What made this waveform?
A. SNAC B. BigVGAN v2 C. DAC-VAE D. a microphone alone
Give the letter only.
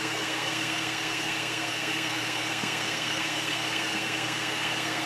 A